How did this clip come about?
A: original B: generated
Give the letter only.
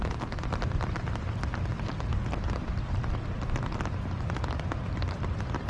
A